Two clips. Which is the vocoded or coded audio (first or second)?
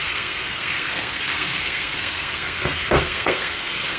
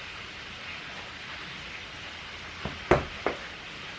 first